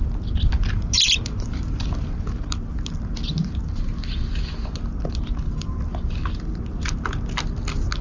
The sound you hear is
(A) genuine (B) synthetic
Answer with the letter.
A